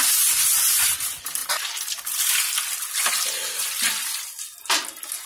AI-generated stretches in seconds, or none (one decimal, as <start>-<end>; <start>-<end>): none

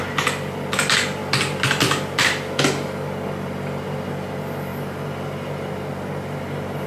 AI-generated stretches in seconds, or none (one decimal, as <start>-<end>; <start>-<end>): none

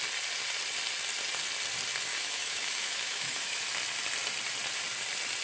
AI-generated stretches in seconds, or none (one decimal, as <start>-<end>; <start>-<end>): 2.1-3.6

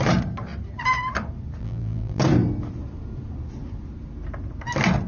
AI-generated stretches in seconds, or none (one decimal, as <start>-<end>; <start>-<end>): 1.6-2.2